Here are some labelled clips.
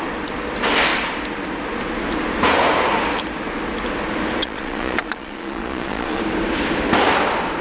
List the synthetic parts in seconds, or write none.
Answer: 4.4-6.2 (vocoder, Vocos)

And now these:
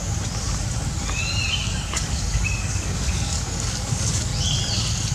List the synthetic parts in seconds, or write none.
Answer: 1.6-4.3 (codec, DAC)

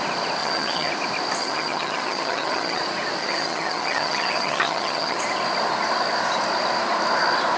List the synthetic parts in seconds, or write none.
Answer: 0.4-0.9 (vocoder, HiFi-GAN); 1.4-2.8; 3.2-5.2

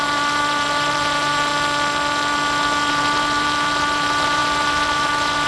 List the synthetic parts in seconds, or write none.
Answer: 0.0-1.5 (vocoder, BigVGAN v2); 2.9-5.5

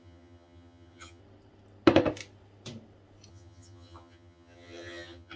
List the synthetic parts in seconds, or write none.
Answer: 0.0-1.2 (vocoder, HiFi-GAN); 3.3-5.4